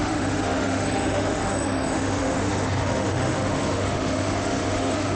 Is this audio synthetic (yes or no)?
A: yes